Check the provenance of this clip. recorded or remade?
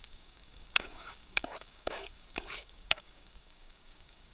remade